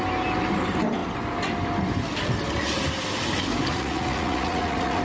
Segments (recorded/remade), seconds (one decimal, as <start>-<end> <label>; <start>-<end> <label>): 0.0-3.7 recorded; 3.7-5.0 remade